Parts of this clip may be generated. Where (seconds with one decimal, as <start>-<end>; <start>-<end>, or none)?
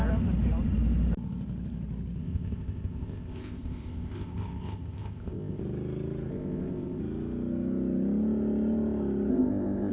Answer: 2.2-5.6; 6.3-7.0; 9.3-9.9